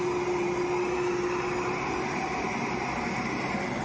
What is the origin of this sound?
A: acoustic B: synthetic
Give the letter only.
A